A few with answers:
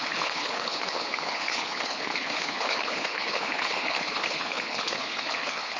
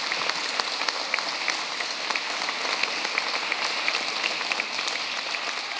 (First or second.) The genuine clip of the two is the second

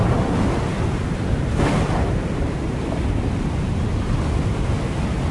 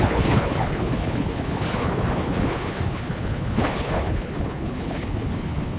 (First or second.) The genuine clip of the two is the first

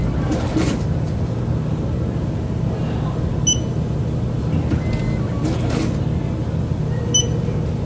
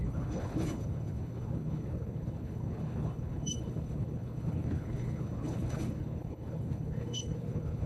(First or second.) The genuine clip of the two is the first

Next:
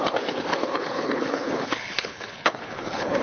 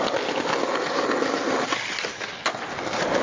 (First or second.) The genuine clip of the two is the second